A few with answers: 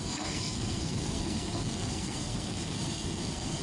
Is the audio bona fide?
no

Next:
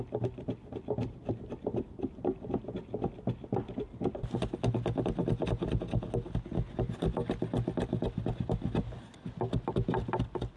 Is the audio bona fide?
yes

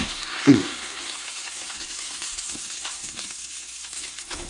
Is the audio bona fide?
no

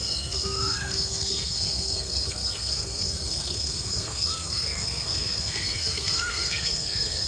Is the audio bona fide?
no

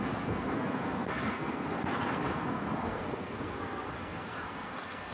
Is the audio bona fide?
no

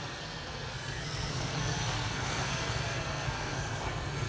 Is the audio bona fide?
no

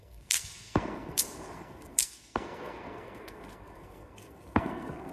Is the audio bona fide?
no